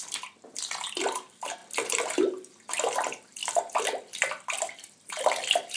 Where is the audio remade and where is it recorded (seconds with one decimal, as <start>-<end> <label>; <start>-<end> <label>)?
0.0-5.8 recorded